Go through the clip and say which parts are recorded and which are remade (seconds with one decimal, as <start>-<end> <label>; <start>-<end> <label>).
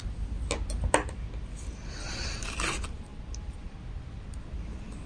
0.0-3.1 recorded; 3.1-3.8 remade; 3.8-5.1 recorded